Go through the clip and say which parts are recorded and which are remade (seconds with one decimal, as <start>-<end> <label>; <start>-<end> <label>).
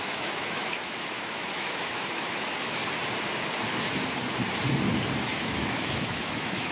0.0-2.8 remade; 2.8-5.3 recorded; 5.3-6.7 remade